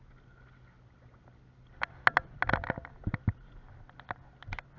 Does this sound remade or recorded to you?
recorded